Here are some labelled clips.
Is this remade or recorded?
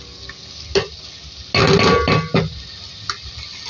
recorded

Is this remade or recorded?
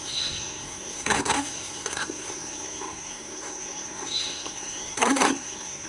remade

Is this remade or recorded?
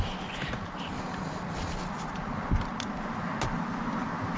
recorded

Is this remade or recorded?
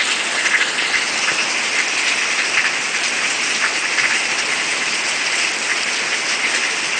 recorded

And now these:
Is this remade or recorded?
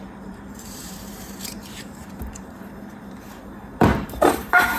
remade